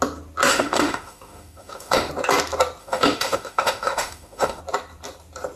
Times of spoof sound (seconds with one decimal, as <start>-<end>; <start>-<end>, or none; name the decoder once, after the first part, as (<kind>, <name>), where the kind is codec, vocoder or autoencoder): 0.5-2.1 (autoencoder, DAC-VAE); 2.8-4.6